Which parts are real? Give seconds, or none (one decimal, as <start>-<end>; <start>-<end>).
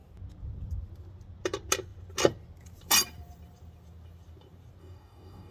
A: 0.0-4.8